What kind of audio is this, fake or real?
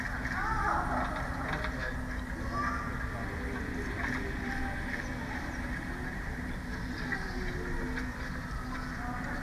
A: real